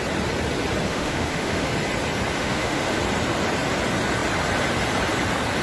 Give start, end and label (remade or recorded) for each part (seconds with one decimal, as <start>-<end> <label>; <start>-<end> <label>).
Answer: 0.0-0.9 recorded; 0.9-1.7 remade; 1.7-2.4 recorded; 2.4-3.0 remade; 3.0-5.6 recorded